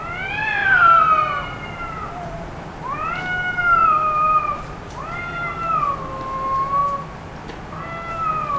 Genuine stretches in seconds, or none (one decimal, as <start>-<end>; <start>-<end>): 0.0-0.6; 3.2-3.8; 5.8-8.6